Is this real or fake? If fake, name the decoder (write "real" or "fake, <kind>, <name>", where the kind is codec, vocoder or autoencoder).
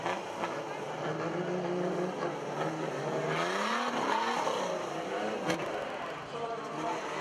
real